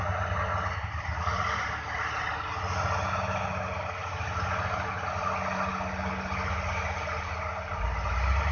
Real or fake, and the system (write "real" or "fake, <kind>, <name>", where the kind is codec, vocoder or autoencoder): real